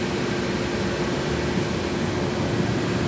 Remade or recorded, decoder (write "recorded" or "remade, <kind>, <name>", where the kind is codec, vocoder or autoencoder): recorded